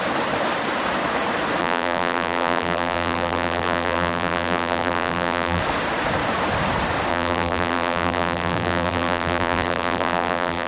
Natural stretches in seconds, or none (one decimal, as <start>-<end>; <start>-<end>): 0.0-1.6; 5.6-7.1